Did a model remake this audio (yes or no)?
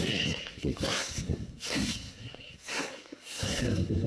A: yes